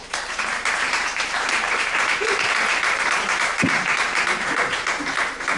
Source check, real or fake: fake